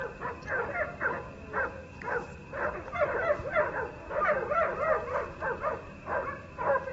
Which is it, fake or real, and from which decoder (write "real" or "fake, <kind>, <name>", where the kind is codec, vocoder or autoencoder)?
real